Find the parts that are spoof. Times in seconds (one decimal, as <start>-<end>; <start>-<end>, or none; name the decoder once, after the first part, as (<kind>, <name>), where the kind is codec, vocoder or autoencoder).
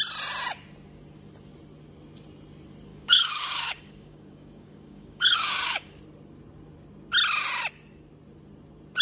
2.9-6.0 (codec, DAC)